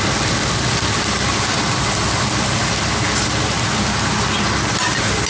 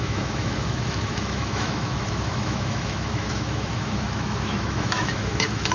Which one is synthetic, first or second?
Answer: second